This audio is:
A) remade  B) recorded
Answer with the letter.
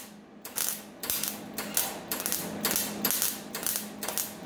B